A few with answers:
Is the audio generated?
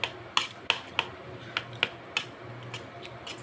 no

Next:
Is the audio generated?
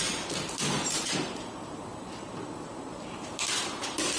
yes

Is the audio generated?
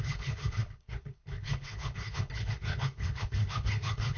yes